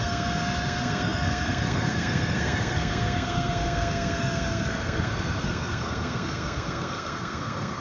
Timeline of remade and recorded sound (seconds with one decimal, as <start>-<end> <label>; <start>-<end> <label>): 0.0-7.8 remade